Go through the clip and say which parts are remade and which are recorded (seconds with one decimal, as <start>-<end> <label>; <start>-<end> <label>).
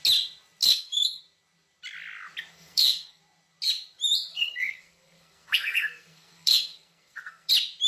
0.0-0.6 recorded; 0.6-1.2 remade; 1.2-2.5 recorded; 2.5-3.2 remade; 3.2-4.3 recorded; 4.3-7.5 remade; 7.5-7.9 recorded